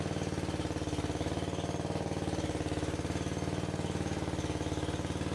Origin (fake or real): real